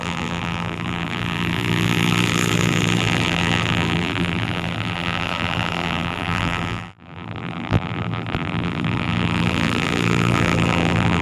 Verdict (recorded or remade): remade